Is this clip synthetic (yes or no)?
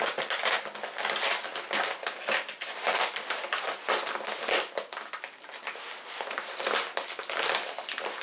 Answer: no